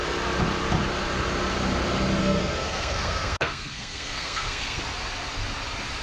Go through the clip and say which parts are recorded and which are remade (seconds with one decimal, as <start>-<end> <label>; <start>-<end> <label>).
0.0-2.2 recorded; 2.2-4.8 remade; 4.8-6.0 recorded